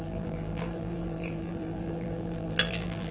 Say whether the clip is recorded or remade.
remade